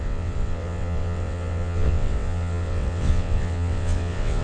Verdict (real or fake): fake